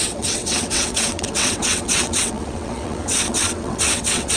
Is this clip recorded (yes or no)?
no